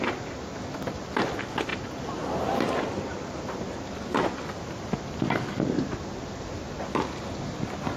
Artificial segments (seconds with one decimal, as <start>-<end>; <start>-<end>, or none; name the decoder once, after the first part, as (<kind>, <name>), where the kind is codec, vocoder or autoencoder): none